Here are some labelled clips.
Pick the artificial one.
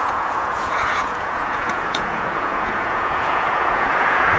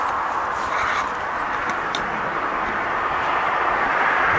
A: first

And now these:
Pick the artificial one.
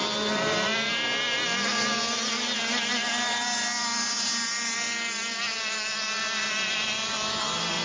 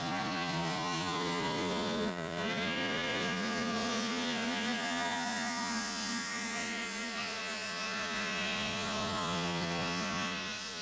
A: second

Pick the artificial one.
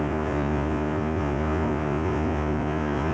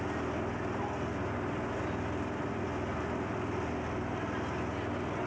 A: first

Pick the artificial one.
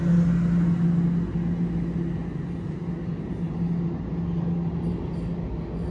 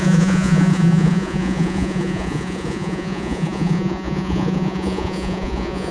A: second